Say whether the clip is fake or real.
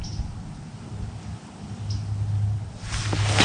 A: real